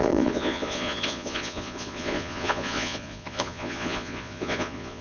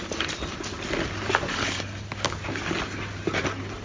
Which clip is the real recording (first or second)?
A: second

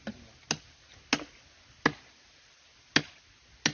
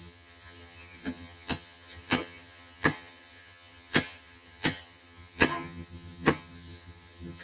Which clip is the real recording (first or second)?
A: first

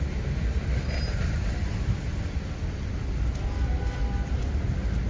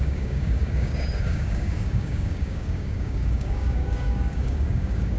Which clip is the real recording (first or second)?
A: first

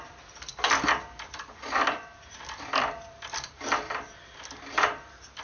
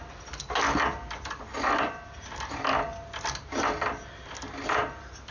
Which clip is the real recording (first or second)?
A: second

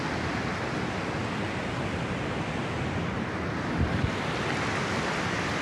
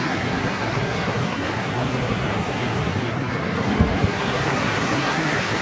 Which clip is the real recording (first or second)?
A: first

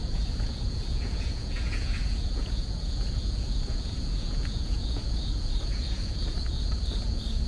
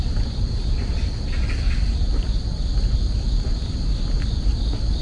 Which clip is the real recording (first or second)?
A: second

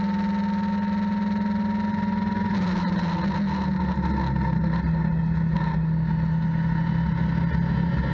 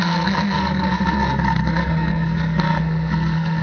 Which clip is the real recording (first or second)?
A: first